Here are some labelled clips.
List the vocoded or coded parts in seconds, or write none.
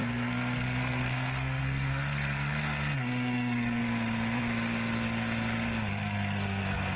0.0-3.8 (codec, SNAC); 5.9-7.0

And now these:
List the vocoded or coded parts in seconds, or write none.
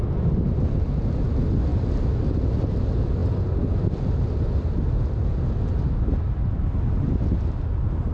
1.7-2.8 (vocoder, BigVGAN v2)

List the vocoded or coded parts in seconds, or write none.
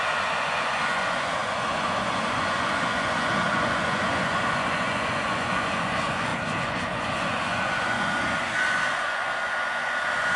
0.0-10.4 (vocoder, Vocos)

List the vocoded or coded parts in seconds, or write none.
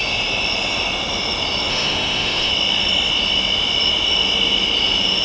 1.7-2.5 (autoencoder, DAC-VAE)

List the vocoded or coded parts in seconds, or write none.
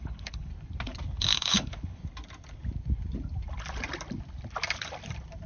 0.0-0.5 (codec, HILCodec); 1.2-2.0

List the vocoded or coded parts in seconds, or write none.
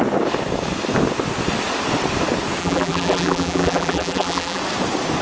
2.6-4.6 (vocoder, BigVGAN v2)